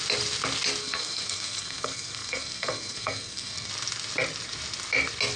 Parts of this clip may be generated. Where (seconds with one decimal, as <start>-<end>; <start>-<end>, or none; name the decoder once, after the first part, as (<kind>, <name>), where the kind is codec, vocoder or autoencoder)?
0.8-3.7 (codec, SNAC)